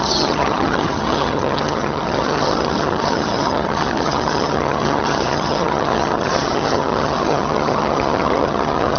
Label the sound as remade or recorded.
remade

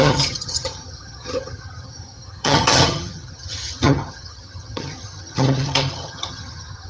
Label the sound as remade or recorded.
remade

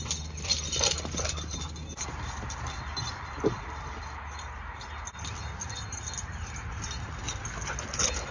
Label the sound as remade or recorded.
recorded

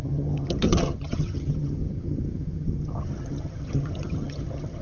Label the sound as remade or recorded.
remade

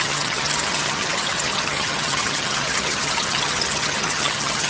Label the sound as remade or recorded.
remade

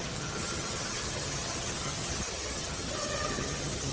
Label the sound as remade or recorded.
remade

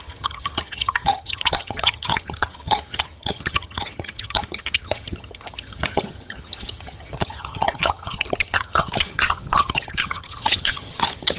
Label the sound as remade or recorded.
remade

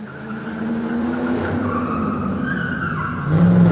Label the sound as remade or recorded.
recorded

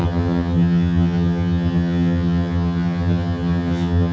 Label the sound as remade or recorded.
remade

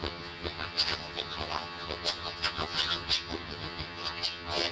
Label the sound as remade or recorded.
remade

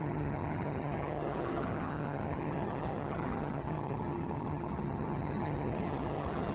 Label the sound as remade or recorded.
remade